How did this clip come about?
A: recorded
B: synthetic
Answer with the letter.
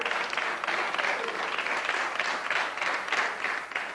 A